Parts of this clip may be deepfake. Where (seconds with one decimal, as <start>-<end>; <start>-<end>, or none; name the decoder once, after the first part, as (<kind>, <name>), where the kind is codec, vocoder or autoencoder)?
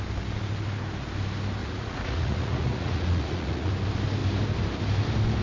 1.6-3.7 (vocoder, Vocos)